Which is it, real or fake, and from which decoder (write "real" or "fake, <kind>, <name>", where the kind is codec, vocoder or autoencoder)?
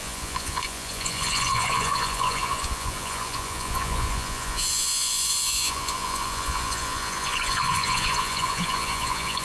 fake, vocoder, Vocos